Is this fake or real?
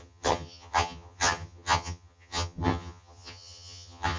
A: fake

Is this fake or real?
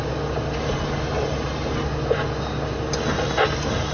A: real